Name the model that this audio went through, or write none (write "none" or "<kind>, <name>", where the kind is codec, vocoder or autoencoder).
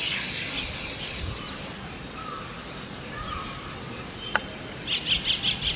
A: none